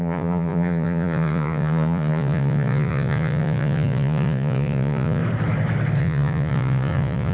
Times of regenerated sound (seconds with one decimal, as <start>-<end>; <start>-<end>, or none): 0.0-5.2; 6.0-7.3